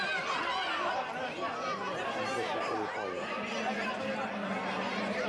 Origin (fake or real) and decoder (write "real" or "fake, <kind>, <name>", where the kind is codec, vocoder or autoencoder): real